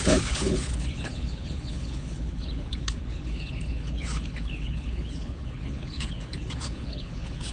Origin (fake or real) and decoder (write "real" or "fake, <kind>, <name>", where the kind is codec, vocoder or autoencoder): fake, codec, HILCodec